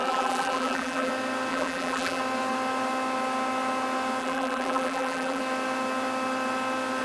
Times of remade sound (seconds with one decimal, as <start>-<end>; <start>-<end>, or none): 0.0-1.1; 1.5-2.2; 4.2-5.4